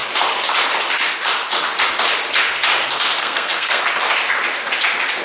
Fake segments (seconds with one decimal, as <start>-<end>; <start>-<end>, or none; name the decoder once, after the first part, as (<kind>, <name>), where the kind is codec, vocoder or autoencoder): 3.2-3.8 (codec, SNAC)